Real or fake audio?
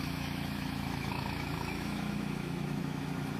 fake